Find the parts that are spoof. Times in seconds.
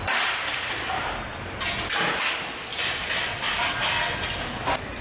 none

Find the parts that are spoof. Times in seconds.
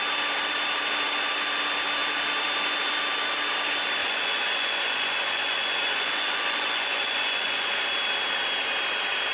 4.0-7.9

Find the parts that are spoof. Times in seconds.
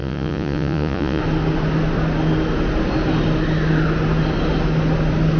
0.0-1.2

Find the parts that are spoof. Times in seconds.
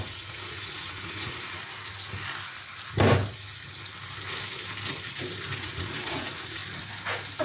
0.0-1.6; 5.6-6.6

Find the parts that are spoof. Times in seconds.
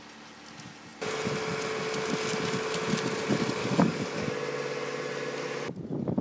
3.6-4.3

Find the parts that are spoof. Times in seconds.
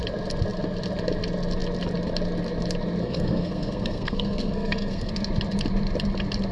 3.0-5.1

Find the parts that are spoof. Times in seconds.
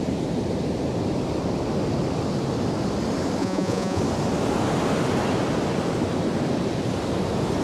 3.4-4.0